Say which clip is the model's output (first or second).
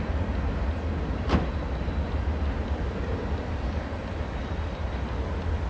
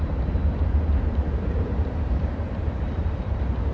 second